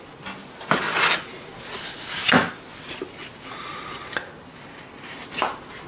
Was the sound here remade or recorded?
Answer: recorded